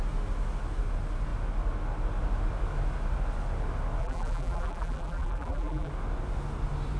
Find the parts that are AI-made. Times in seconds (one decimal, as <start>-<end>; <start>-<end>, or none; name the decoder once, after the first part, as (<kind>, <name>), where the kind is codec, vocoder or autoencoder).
4.0-5.9 (vocoder, BigVGAN v2)